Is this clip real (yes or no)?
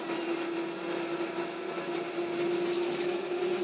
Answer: yes